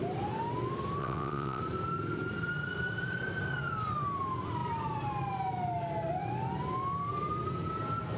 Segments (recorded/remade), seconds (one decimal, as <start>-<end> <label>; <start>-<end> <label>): 0.0-1.0 recorded; 1.0-1.6 remade; 1.6-8.2 recorded

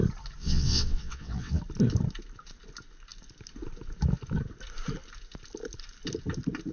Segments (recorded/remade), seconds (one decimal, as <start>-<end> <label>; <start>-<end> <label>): 0.0-0.4 recorded; 0.4-1.6 remade; 1.6-6.7 recorded

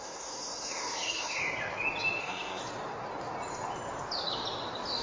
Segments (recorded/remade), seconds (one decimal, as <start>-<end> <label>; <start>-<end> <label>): 0.0-1.4 remade; 1.4-2.2 recorded; 2.2-2.6 remade; 2.6-5.0 recorded

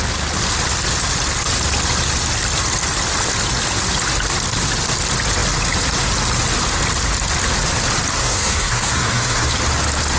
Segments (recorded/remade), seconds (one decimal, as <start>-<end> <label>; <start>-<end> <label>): 0.0-8.2 recorded; 8.2-9.5 remade; 9.5-10.2 recorded

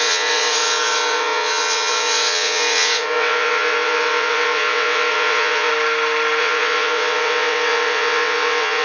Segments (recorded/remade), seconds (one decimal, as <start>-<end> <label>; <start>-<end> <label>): 0.0-5.7 remade; 5.7-6.4 recorded; 6.4-8.8 remade

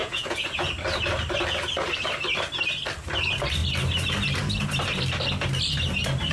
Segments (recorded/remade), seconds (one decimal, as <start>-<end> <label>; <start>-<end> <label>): 0.0-0.7 remade; 0.7-6.3 recorded

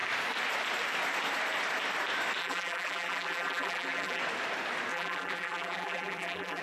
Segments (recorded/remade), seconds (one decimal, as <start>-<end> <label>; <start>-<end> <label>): 0.0-2.4 recorded; 2.4-4.2 remade; 4.2-4.9 recorded; 4.9-6.6 remade